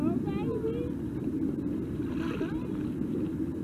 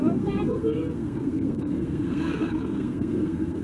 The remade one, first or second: second